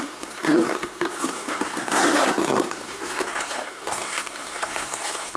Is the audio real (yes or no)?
no